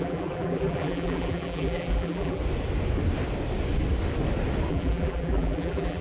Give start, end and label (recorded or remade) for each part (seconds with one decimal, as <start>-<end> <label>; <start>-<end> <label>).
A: 0.0-2.4 remade; 2.4-4.7 recorded; 4.7-6.0 remade